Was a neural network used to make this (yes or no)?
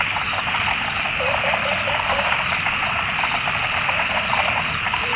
no